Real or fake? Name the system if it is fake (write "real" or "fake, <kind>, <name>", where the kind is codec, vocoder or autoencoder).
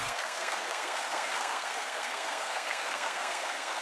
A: fake, codec, SNAC